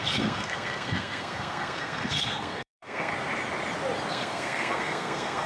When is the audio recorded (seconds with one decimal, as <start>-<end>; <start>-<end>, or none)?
3.1-4.1